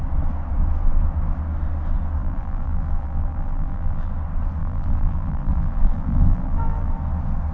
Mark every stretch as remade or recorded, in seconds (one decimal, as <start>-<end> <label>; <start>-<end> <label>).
0.0-2.2 recorded; 2.2-4.1 remade; 4.1-4.6 recorded; 4.6-6.9 remade; 6.9-7.5 recorded

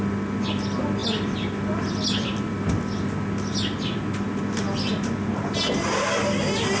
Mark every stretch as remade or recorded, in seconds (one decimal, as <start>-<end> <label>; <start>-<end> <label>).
0.0-1.0 recorded; 1.0-2.7 remade; 2.7-6.8 recorded

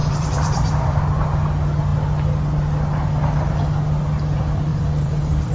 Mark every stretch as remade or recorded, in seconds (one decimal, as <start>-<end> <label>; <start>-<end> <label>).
0.0-1.0 remade; 1.0-4.7 recorded; 4.7-5.5 remade

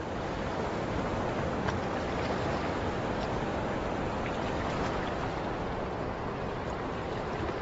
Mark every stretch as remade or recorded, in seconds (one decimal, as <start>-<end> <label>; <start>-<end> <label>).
0.0-7.6 recorded

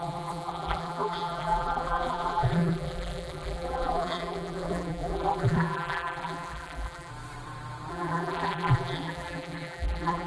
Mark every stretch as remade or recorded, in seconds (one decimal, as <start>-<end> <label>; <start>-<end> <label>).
0.0-7.1 remade; 7.1-7.9 recorded; 7.9-10.3 remade

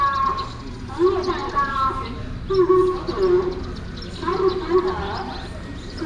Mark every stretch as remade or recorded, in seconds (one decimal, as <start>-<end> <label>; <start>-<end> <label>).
0.0-1.4 recorded; 1.4-2.7 remade; 2.7-4.3 recorded; 4.3-6.1 remade

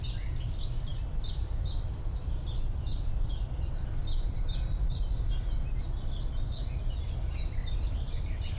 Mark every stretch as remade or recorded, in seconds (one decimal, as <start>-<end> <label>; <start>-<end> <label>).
0.0-0.9 recorded; 0.9-2.3 remade; 2.3-4.2 recorded; 4.2-5.2 remade; 5.2-7.6 recorded; 7.6-8.6 remade

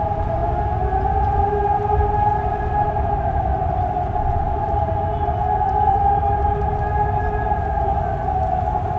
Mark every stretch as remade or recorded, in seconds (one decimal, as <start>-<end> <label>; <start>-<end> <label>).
0.0-0.4 remade; 0.4-1.5 recorded; 1.5-9.0 remade